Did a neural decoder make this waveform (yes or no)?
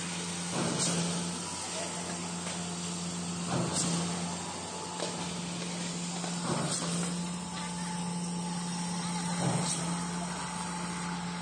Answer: no